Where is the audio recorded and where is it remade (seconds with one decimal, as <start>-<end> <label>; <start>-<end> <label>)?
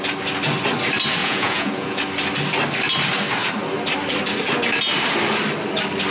0.0-1.2 recorded; 1.2-2.0 remade; 2.0-6.1 recorded